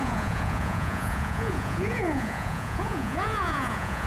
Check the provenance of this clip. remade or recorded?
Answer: remade